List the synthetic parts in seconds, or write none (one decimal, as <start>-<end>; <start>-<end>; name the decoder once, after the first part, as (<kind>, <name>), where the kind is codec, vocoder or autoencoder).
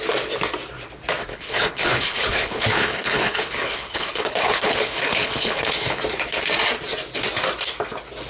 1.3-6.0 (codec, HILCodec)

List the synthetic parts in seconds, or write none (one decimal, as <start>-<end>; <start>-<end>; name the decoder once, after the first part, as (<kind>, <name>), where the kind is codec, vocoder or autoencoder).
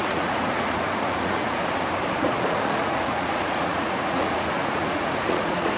0.0-1.6 (vocoder, Vocos); 2.2-5.8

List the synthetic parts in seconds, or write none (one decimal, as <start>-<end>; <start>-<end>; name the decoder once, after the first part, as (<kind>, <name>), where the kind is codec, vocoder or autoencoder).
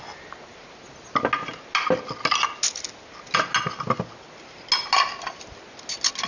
none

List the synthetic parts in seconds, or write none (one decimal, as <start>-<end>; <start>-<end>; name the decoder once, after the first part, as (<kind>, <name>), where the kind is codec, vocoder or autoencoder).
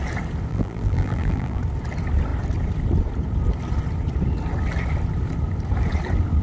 0.5-1.6 (vocoder, BigVGAN v2)